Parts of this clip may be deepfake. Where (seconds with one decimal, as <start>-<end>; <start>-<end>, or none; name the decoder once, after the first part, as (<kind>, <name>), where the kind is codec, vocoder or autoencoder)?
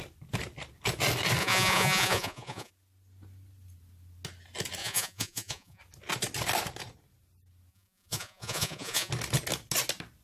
1.4-2.7 (vocoder, Vocos); 4.8-5.8; 7.7-9.1